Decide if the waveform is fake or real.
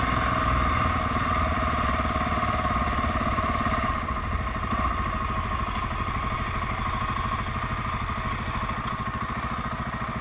real